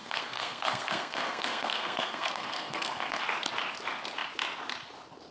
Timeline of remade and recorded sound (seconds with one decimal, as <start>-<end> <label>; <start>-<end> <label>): 0.0-3.2 remade; 3.2-5.3 recorded

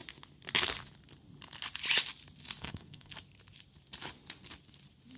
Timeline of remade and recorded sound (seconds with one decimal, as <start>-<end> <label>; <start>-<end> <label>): 0.0-2.6 recorded; 2.6-3.1 remade; 3.1-5.2 recorded

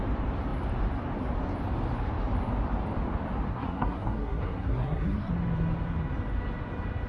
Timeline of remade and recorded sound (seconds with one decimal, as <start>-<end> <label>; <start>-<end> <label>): 0.0-3.5 recorded; 3.5-5.3 remade; 5.3-7.1 recorded

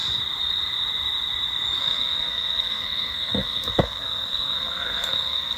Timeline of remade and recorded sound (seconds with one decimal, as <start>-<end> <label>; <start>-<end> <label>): 0.0-1.8 recorded; 1.8-5.6 remade